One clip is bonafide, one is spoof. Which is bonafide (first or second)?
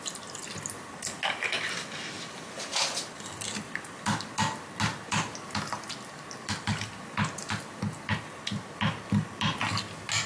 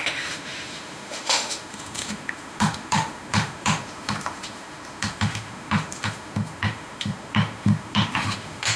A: first